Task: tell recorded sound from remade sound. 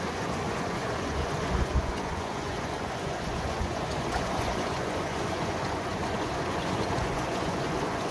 remade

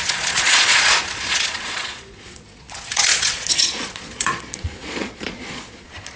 remade